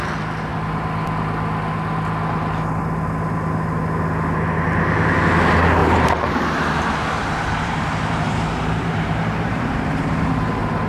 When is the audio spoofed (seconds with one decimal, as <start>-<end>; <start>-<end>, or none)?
5.8-10.3

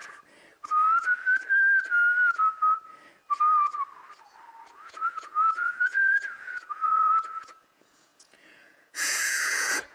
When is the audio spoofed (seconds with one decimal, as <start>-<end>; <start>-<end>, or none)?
4.7-9.9

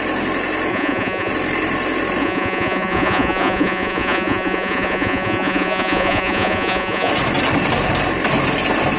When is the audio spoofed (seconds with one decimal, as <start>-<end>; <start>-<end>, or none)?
0.7-1.3; 2.2-7.1

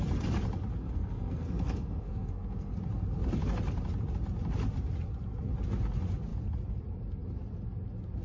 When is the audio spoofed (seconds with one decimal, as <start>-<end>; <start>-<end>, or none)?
0.8-2.7

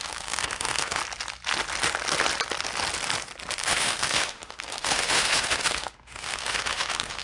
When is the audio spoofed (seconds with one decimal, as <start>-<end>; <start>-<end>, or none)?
0.0-1.0; 3.6-7.2